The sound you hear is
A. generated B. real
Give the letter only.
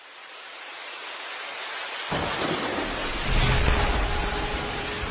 B